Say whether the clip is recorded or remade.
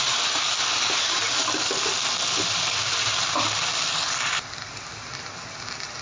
recorded